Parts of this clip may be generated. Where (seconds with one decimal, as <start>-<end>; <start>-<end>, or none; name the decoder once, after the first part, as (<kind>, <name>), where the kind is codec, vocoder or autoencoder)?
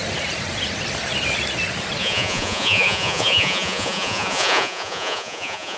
2.0-5.8 (vocoder, Vocos)